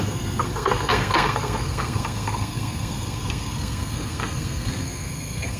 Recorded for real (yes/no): no